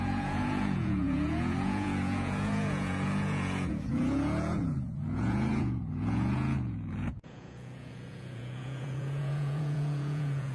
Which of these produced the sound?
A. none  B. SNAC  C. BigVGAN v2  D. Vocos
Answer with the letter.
D